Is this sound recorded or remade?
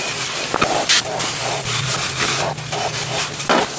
recorded